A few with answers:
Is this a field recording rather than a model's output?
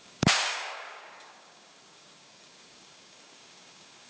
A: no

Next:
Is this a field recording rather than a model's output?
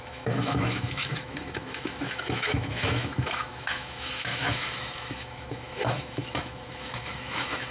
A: no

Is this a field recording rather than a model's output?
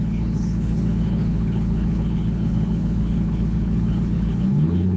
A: no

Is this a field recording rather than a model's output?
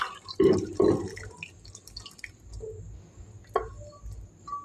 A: yes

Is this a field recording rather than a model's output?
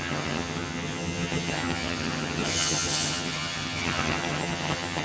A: no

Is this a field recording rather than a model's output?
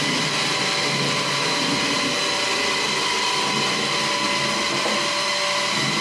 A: yes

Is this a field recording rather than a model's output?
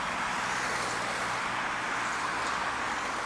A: yes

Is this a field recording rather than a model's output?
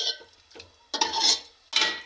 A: yes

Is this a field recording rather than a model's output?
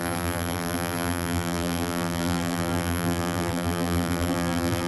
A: no